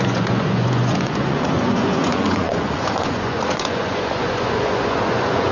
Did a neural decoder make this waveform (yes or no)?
yes